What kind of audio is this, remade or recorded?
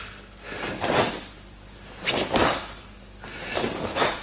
remade